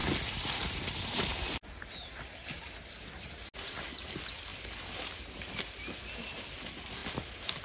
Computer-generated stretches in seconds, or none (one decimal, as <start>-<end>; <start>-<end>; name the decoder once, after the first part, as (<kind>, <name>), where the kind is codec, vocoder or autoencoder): none